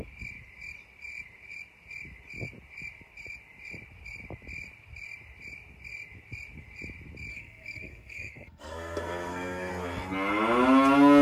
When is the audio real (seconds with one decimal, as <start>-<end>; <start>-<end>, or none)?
0.0-7.3; 9.7-11.2